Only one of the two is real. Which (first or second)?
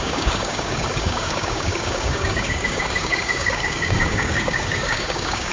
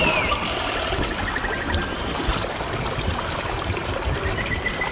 second